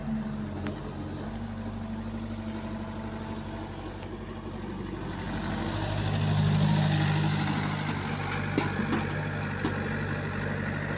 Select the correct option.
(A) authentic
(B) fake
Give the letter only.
A